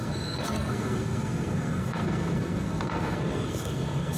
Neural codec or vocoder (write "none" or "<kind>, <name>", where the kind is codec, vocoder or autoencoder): codec, SNAC